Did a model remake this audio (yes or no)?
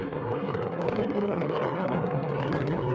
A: yes